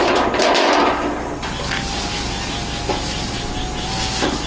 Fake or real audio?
real